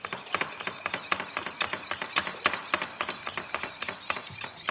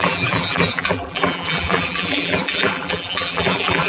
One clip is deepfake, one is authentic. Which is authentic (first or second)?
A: first